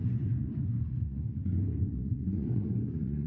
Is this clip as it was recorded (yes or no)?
no